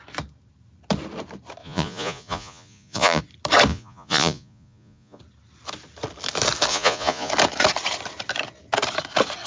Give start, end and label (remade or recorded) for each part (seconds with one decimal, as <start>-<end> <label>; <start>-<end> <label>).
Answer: 0.0-1.6 recorded; 1.6-3.2 remade; 3.2-3.7 recorded; 3.7-5.2 remade; 5.2-6.7 recorded; 6.7-7.3 remade; 7.3-9.5 recorded